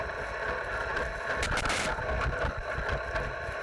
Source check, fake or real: real